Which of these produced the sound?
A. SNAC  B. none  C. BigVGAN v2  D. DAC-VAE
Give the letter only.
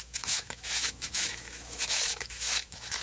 D